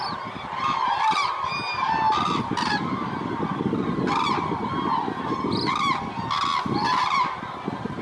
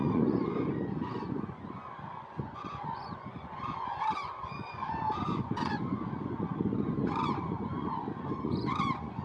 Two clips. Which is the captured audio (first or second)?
first